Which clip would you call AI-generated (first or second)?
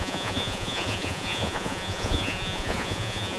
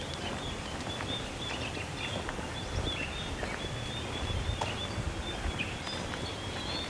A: first